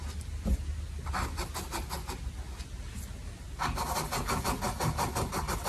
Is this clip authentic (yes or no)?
yes